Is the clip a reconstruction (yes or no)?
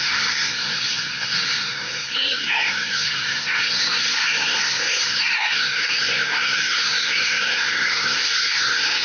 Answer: yes